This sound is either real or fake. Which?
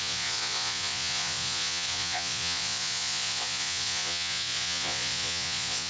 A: fake